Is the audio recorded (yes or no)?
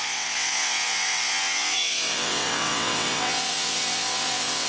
no